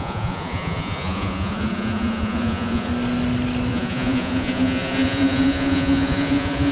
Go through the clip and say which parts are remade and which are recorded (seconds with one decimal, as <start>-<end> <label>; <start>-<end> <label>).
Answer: 0.0-2.9 remade; 2.9-3.7 recorded; 3.7-6.7 remade